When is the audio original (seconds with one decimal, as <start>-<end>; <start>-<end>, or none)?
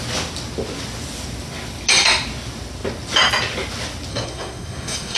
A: 0.0-4.1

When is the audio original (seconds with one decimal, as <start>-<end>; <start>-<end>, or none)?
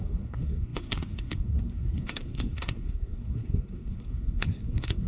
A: none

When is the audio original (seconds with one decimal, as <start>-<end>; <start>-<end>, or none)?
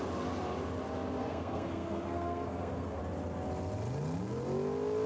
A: 0.0-1.2; 3.0-5.1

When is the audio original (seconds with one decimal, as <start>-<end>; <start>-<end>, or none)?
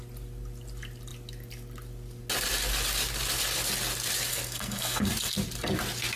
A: 0.0-4.3; 5.1-6.2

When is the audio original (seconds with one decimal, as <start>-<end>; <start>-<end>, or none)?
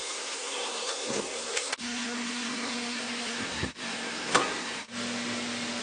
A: 4.9-5.8